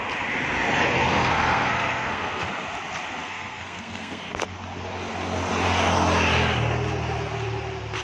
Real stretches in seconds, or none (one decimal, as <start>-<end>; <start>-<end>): 0.0-1.1; 2.5-3.2; 4.3-8.0